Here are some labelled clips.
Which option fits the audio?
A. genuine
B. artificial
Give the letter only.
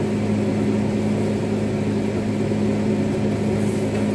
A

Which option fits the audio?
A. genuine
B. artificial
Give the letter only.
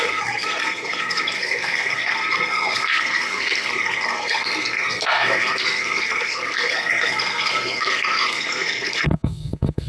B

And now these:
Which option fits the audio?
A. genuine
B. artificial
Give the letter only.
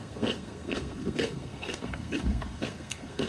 B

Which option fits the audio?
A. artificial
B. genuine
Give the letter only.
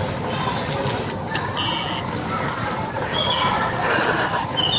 B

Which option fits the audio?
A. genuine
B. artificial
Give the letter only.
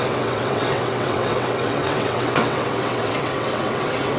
B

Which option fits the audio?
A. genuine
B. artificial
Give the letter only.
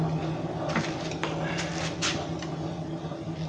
A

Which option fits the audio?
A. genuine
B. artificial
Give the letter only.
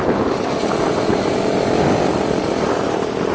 A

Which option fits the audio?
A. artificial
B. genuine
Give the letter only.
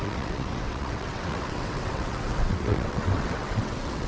A